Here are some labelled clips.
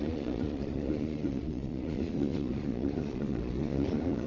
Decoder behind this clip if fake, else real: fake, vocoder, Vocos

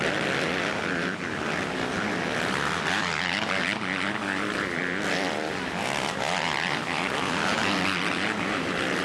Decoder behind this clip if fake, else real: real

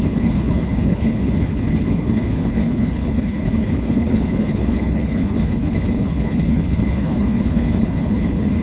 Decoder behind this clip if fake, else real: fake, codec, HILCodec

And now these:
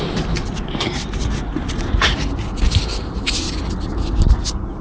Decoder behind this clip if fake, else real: real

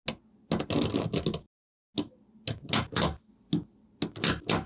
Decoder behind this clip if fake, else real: real